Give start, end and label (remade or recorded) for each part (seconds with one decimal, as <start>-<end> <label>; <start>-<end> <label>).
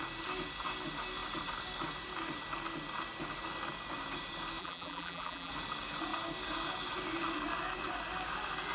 0.0-4.6 recorded; 4.6-5.5 remade; 5.5-8.7 recorded